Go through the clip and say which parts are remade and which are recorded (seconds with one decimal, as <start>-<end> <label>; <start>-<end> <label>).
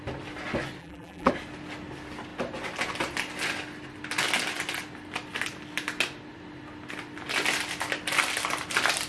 0.0-0.8 recorded; 0.8-1.3 remade; 1.3-9.1 recorded